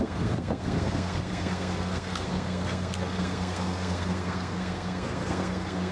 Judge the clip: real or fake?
fake